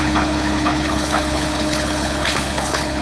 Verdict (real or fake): fake